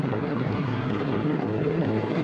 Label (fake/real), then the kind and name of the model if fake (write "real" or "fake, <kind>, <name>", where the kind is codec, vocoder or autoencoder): fake, codec, SNAC